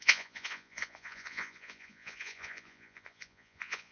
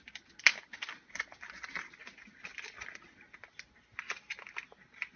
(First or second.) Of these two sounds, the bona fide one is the second